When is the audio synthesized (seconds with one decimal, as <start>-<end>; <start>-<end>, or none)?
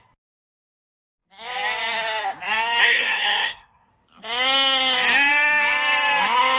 2.8-3.9